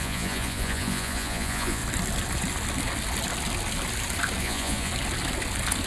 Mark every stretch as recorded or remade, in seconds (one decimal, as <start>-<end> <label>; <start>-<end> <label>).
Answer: 0.0-1.8 remade; 1.8-4.4 recorded; 4.4-4.9 remade; 4.9-5.9 recorded